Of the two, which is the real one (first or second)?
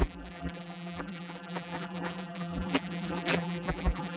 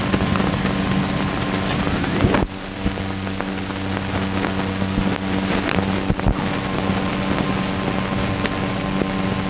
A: second